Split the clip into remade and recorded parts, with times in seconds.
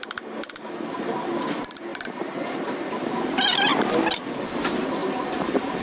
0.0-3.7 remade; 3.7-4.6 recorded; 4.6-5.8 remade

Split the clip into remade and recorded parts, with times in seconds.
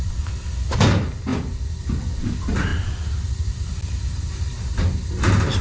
0.0-5.6 recorded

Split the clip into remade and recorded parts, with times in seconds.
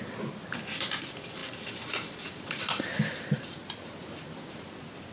0.0-1.4 recorded; 1.4-4.5 remade; 4.5-5.1 recorded